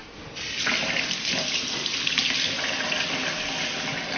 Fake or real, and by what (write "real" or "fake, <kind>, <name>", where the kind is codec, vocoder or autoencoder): real